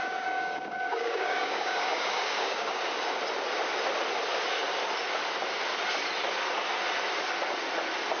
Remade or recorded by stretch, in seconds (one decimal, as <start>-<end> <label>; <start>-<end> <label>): 0.0-2.8 remade; 2.8-8.2 recorded